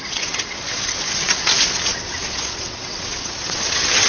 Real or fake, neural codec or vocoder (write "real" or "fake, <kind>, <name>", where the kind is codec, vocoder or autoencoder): fake, vocoder, WaveNeXt